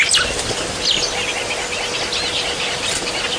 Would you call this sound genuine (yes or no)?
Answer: yes